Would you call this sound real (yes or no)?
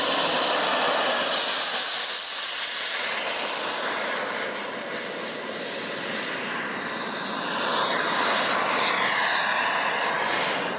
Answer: yes